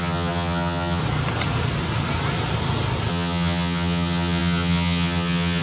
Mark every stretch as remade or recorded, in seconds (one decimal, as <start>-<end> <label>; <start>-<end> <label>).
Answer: 0.0-1.0 remade; 1.0-3.1 recorded; 3.1-5.6 remade